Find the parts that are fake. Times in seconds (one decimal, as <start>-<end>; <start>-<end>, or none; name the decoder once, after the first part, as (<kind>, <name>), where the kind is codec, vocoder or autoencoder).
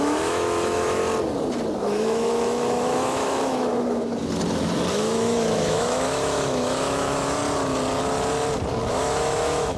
0.0-1.0 (autoencoder, DAC-VAE); 1.8-4.1; 4.9-7.4; 8.9-9.8